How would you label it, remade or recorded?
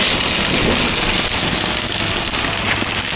recorded